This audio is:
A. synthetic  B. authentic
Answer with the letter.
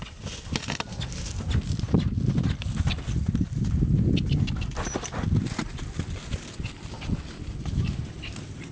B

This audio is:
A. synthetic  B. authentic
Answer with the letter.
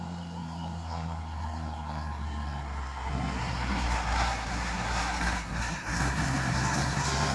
A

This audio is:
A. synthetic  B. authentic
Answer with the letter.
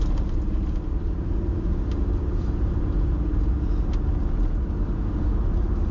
B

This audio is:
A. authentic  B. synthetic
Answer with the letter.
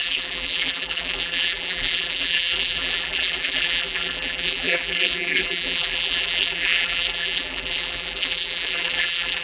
B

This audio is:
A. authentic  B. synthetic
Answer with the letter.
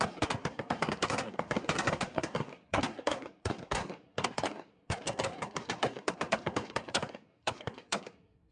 B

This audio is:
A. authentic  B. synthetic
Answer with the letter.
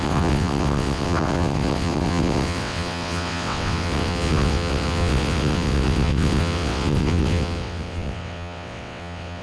B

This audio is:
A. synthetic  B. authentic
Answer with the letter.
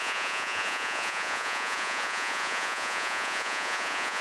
A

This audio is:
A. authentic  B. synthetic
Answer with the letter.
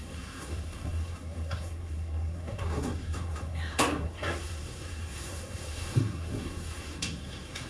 B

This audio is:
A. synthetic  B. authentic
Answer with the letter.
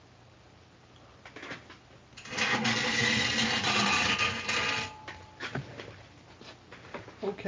B